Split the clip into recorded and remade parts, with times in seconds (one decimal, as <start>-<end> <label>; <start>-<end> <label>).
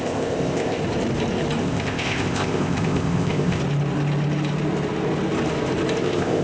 0.0-0.8 remade; 0.8-1.6 recorded; 1.6-3.6 remade; 3.6-6.0 recorded; 6.0-6.4 remade